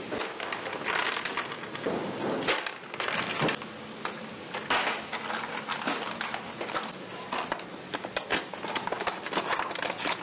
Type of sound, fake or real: real